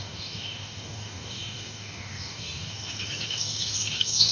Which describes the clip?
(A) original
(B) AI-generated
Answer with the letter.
B